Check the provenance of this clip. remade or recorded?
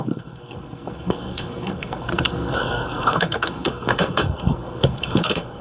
remade